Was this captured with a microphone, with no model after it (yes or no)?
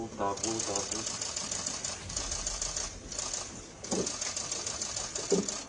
yes